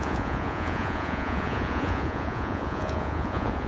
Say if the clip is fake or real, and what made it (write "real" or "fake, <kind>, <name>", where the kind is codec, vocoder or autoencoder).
fake, vocoder, Vocos